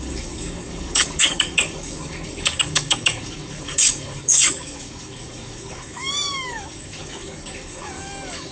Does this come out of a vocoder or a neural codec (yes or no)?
yes